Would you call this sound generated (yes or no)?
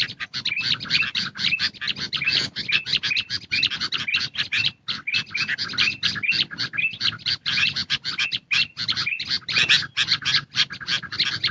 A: no